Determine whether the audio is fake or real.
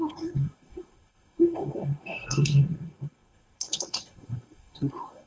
fake